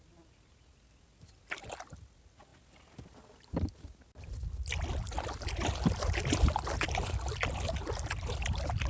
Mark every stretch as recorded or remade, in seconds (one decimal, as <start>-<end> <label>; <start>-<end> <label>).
0.0-8.9 recorded